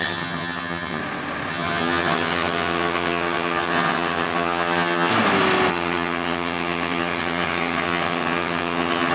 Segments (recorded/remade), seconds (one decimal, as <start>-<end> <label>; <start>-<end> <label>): 0.0-1.0 remade; 1.0-1.5 recorded; 1.5-5.1 remade; 5.1-5.7 recorded; 5.7-9.1 remade